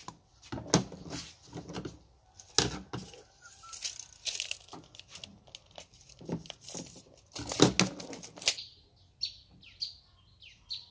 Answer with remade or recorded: recorded